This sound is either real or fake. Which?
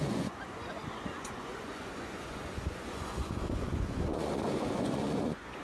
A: fake